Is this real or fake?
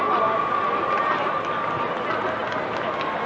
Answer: real